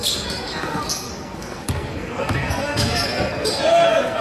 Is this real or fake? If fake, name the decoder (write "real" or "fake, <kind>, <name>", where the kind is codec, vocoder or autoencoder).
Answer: fake, codec, SNAC